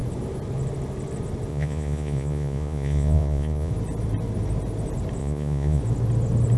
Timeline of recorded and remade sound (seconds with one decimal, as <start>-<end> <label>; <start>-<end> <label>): 0.0-1.5 recorded; 1.5-3.7 remade; 3.7-5.2 recorded; 5.2-5.8 remade; 5.8-6.6 recorded